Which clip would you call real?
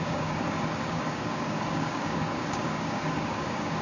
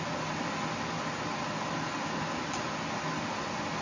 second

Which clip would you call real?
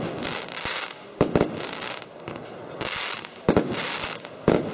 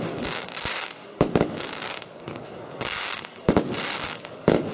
first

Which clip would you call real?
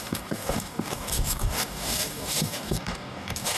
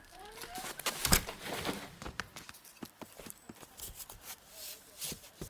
second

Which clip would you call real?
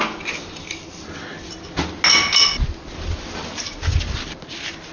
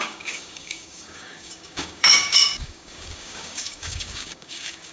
first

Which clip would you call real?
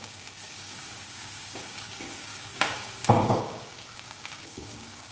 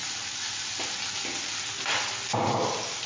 second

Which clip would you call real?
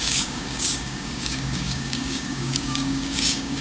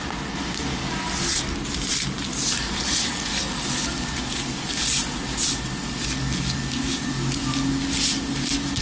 second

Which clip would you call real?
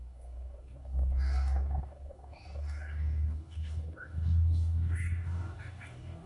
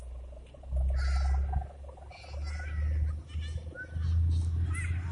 second